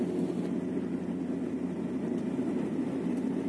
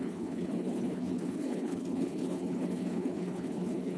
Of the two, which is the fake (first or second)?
second